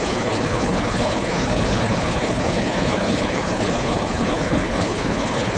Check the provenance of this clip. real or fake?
fake